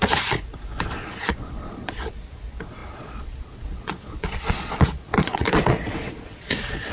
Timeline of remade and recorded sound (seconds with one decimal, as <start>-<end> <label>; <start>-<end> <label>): 0.0-6.9 remade